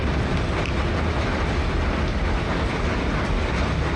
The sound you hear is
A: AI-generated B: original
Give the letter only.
B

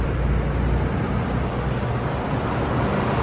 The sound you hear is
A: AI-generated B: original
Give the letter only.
B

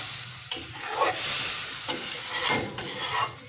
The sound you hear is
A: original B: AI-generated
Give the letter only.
A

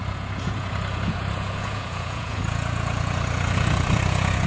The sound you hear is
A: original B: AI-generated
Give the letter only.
B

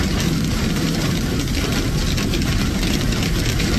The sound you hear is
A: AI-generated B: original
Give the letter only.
B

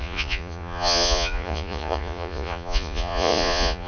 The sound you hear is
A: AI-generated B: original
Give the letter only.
A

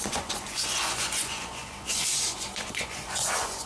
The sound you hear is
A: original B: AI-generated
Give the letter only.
B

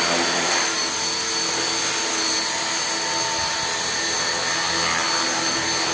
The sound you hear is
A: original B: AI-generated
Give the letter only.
A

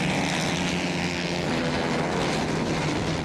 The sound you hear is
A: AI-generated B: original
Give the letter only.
B